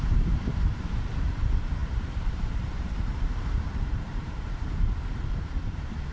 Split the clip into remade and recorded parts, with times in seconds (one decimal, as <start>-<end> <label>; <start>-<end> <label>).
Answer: 0.0-6.1 remade